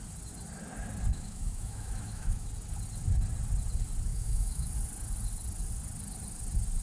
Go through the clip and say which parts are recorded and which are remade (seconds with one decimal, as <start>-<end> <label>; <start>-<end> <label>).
0.0-1.1 recorded; 1.1-2.5 remade; 2.5-4.1 recorded; 4.1-4.7 remade; 4.7-6.8 recorded